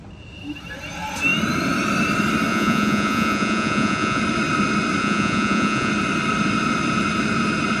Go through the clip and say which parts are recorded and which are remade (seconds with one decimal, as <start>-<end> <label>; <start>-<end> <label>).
0.0-2.5 recorded; 2.5-4.2 remade; 4.2-5.0 recorded; 5.0-5.9 remade; 5.9-7.8 recorded